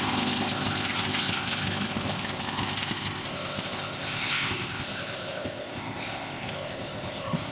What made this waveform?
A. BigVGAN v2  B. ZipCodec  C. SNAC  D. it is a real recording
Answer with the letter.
B